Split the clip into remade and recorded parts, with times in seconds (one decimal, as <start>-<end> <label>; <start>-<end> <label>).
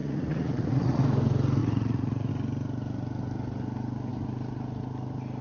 0.0-1.0 remade; 1.0-1.6 recorded; 1.6-2.3 remade; 2.3-5.4 recorded